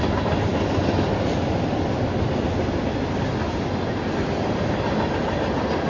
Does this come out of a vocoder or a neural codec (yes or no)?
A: no